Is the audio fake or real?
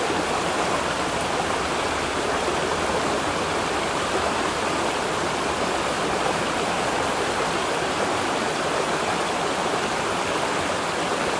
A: fake